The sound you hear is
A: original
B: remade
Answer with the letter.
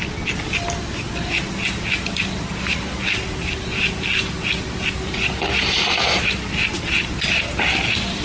A